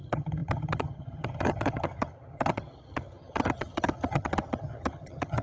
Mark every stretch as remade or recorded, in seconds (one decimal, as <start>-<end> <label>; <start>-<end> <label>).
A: 0.0-5.4 remade